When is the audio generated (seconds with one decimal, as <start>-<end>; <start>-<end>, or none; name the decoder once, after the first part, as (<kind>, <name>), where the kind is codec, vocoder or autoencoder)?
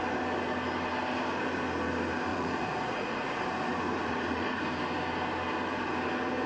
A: 2.3-3.4 (vocoder, Vocos); 4.0-4.6